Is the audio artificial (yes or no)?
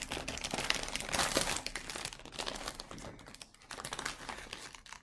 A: no